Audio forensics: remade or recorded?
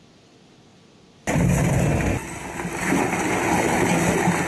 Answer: recorded